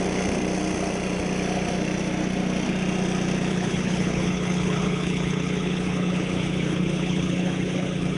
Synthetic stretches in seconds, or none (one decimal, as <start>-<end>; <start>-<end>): 3.5-8.2